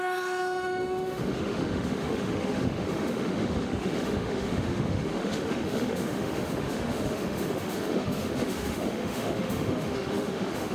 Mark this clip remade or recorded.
remade